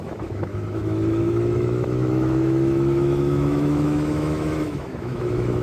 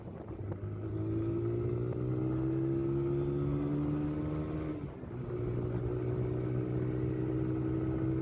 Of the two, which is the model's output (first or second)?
first